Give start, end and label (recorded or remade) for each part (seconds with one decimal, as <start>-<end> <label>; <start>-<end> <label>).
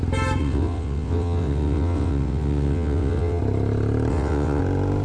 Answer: 0.0-0.4 recorded; 0.4-3.4 remade; 3.4-4.1 recorded; 4.1-4.6 remade; 4.6-5.0 recorded